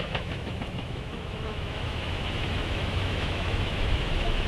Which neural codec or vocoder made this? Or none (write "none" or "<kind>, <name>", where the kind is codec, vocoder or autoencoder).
autoencoder, DAC-VAE